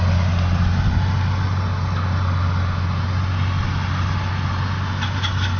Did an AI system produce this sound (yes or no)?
no